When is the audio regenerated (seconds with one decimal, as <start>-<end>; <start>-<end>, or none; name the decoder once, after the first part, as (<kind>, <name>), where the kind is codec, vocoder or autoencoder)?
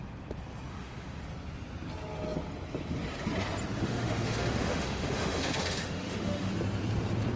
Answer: 0.7-1.2 (autoencoder, DAC-VAE); 3.8-6.5